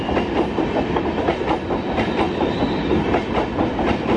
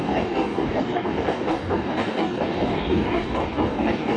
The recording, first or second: first